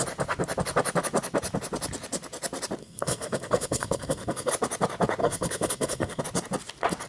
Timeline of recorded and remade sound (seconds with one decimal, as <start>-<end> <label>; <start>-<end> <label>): 0.0-2.8 recorded; 2.8-4.5 remade; 4.5-5.2 recorded; 5.2-6.2 remade; 6.2-7.1 recorded